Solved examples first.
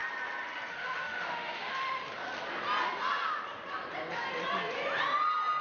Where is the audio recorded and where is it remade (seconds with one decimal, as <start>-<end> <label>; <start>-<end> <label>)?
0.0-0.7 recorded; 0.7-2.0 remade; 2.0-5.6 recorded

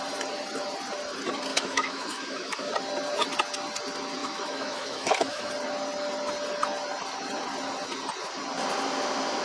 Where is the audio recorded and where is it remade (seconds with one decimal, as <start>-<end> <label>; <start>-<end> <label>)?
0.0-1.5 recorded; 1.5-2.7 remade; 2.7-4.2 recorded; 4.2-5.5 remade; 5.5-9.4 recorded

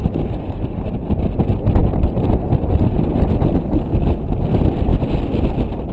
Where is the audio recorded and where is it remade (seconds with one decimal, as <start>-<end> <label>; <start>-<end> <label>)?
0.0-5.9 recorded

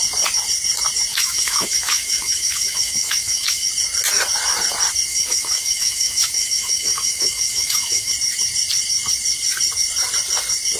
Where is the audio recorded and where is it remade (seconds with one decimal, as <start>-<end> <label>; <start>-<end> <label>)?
0.0-1.1 recorded; 1.1-3.7 remade; 3.7-5.1 recorded; 5.1-8.1 remade; 8.1-10.8 recorded

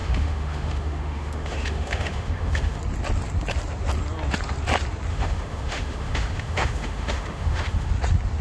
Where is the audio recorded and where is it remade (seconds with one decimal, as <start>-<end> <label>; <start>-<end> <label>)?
0.0-2.8 remade; 2.8-5.1 recorded; 5.1-7.9 remade; 7.9-8.4 recorded